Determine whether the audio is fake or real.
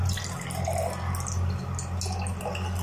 real